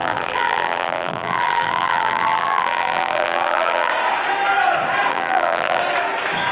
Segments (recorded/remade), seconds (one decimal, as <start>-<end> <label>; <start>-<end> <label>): 0.0-3.9 remade; 3.9-5.1 recorded; 5.1-5.8 remade; 5.8-6.5 recorded